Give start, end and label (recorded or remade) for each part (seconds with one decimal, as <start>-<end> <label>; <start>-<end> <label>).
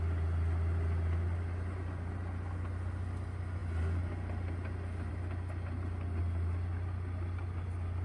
0.0-8.0 recorded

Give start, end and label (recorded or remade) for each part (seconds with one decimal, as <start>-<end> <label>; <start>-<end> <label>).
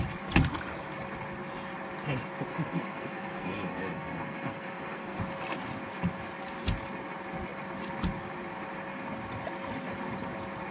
0.0-2.5 recorded; 2.5-5.2 remade; 5.2-10.7 recorded